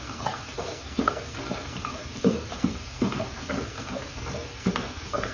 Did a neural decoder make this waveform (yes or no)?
yes